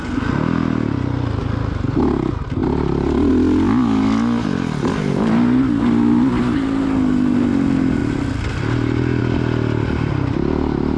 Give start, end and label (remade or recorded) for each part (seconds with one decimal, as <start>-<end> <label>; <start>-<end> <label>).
0.0-11.0 recorded